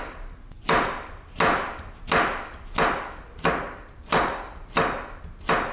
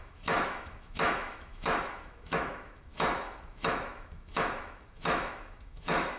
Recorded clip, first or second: first